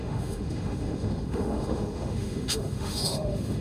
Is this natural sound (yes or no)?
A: no